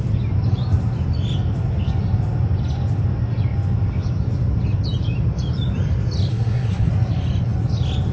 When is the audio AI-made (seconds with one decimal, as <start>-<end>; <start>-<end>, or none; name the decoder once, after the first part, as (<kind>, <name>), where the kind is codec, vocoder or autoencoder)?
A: 6.3-6.9 (codec, SNAC)